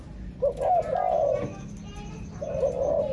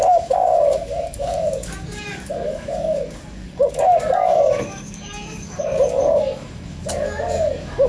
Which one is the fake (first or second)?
second